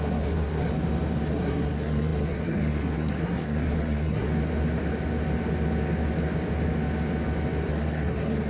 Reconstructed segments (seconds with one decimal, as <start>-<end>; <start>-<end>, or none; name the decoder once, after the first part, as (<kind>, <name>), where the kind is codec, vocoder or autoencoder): 0.0-0.7 (codec, SNAC); 1.3-4.3; 7.7-8.5